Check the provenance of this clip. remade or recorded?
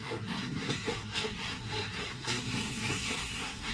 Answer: remade